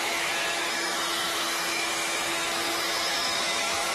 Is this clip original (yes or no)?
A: no